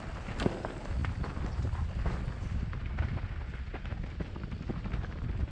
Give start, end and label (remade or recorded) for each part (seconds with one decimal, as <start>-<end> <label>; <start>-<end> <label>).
0.0-5.5 recorded